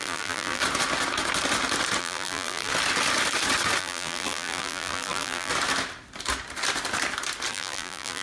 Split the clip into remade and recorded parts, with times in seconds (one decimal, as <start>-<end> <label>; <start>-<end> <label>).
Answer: 0.0-0.6 remade; 0.6-2.0 recorded; 2.0-2.7 remade; 2.7-3.8 recorded; 3.8-5.5 remade; 5.5-7.5 recorded; 7.5-8.2 remade